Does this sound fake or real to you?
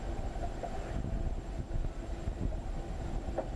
real